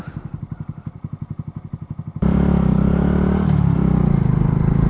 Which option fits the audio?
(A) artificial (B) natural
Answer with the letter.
B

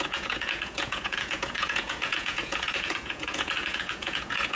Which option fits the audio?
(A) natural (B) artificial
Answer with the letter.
B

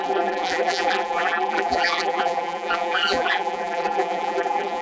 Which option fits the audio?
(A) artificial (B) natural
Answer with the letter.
A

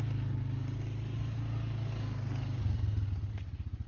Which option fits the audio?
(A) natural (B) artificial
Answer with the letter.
A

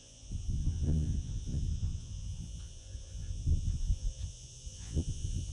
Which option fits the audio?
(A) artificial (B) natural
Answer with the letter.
A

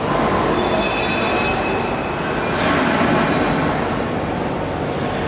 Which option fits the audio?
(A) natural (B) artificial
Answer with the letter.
A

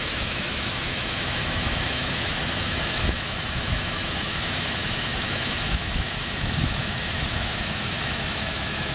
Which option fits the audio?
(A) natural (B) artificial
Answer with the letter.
B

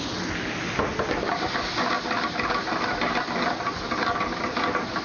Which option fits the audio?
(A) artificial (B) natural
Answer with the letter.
B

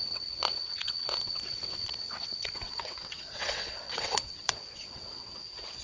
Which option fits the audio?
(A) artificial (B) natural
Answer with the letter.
A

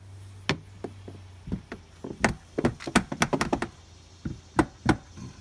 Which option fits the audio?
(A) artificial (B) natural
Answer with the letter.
B